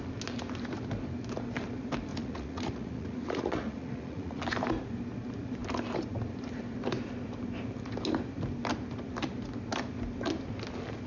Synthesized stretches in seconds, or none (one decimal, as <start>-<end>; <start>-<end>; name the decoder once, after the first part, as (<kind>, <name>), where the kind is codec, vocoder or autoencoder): 2.1-4.4 (vocoder, Vocos)